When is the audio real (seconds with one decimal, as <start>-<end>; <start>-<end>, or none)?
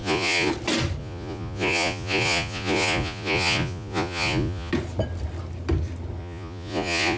0.5-1.0; 4.7-6.2